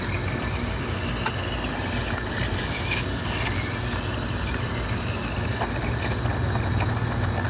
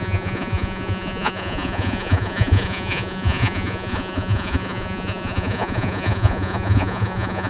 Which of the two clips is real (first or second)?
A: first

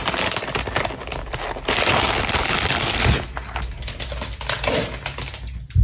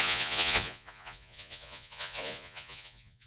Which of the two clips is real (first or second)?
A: first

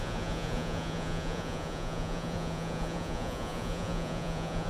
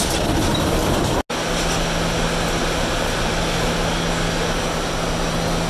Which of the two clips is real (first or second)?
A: second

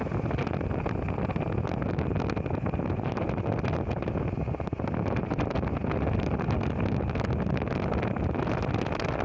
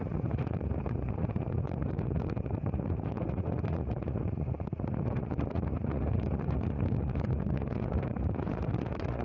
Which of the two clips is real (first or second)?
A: first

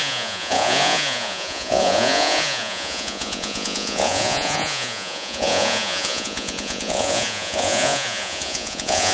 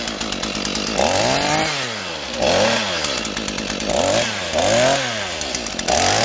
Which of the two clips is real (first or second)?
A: second